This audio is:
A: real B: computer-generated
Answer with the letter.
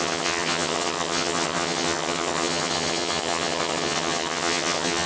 B